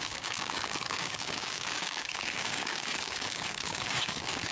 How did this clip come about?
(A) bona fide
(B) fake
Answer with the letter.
B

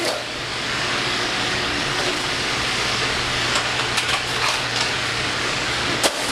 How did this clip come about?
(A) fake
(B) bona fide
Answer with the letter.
A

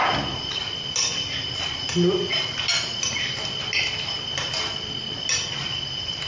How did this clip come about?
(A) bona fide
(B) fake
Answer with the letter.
A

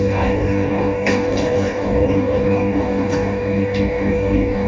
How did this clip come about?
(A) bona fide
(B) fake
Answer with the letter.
B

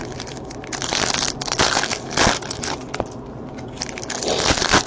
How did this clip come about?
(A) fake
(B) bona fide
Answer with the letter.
B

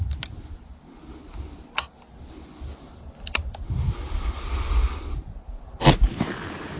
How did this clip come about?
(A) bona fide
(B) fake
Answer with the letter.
A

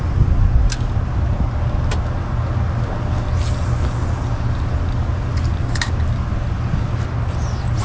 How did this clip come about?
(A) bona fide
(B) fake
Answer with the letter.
A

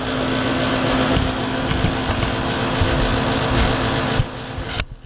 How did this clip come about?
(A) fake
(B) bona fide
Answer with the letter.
B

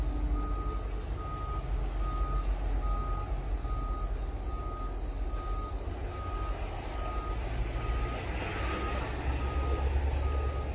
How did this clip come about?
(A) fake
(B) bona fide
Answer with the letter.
B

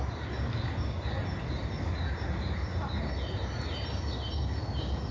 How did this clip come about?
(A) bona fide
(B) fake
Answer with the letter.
A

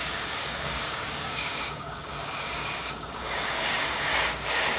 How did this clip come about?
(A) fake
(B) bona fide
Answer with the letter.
A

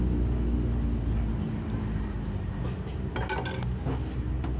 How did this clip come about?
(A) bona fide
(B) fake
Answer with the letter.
A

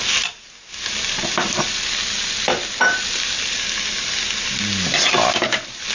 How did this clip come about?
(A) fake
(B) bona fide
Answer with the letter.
B